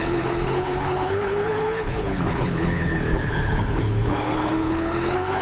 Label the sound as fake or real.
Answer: fake